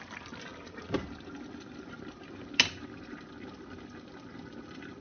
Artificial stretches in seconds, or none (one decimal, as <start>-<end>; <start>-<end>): none